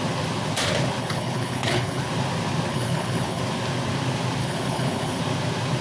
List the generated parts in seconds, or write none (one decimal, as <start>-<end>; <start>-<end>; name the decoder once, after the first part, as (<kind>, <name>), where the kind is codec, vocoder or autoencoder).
1.0-2.1 (codec, HILCodec); 2.7-3.4; 4.4-5.2

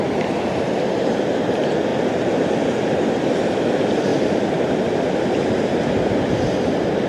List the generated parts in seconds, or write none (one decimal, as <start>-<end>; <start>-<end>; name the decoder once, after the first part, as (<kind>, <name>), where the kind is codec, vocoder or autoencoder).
0.0-1.9 (vocoder, BigVGAN v2); 2.5-7.1

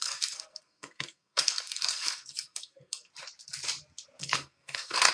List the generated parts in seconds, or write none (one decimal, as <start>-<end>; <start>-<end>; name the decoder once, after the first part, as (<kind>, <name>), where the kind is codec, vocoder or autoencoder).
0.0-3.1 (codec, SNAC); 4.2-5.1